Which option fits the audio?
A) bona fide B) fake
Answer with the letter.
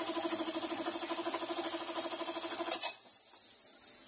A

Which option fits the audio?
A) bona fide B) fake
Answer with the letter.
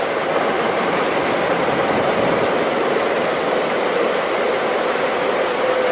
B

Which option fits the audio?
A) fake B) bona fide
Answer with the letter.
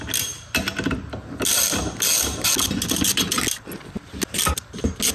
B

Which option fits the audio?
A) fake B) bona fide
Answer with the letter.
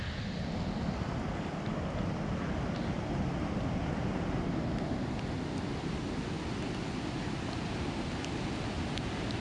B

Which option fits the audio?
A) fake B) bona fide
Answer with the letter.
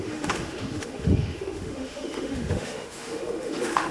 A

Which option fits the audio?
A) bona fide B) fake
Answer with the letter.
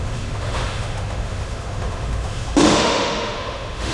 B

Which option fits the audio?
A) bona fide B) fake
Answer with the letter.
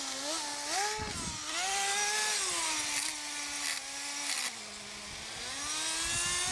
A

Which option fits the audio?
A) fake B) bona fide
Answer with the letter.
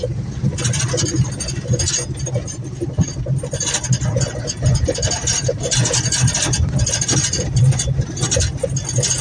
B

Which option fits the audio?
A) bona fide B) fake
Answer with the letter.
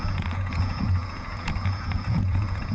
B